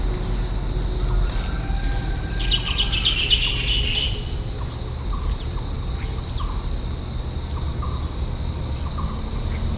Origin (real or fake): real